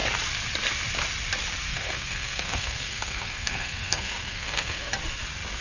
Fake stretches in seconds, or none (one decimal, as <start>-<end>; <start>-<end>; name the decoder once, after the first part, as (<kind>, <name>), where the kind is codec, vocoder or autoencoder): 1.7-4.9 (codec, SNAC)